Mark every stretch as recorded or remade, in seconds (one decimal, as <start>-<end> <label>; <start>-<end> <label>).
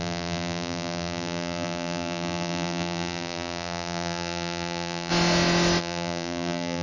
0.0-5.1 remade; 5.1-5.8 recorded; 5.8-6.8 remade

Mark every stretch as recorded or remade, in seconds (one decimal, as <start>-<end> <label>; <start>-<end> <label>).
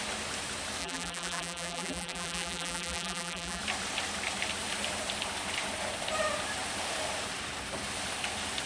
0.0-0.8 recorded; 0.8-3.6 remade; 3.6-8.7 recorded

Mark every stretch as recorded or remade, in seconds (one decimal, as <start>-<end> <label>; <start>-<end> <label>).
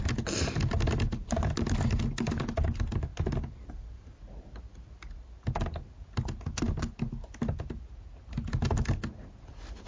0.0-9.9 recorded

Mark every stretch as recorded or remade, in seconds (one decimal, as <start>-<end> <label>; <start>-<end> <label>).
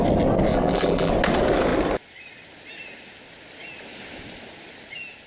0.0-0.5 recorded; 0.5-1.1 remade; 1.1-5.3 recorded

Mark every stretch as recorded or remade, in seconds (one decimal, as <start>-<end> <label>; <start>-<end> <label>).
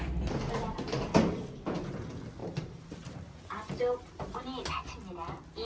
0.0-2.4 recorded; 2.4-4.3 remade; 4.3-5.6 recorded